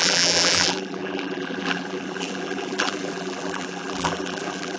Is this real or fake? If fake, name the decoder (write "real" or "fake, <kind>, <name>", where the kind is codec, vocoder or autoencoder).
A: fake, vocoder, BigVGAN v2